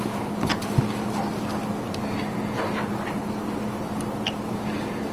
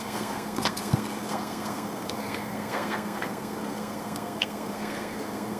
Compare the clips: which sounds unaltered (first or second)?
first